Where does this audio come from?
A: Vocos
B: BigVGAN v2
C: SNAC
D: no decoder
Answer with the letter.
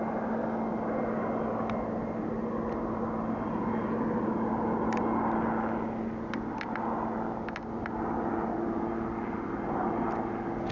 D